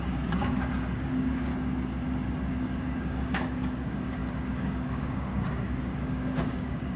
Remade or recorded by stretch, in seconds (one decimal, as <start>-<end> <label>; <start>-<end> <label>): 0.0-1.5 remade; 1.5-2.5 recorded; 2.5-7.0 remade